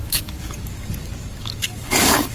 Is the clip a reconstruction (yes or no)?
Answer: yes